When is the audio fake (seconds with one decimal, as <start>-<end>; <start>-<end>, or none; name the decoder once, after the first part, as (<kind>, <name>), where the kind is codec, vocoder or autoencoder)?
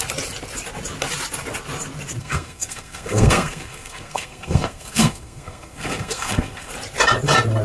2.2-6.7 (codec, SNAC)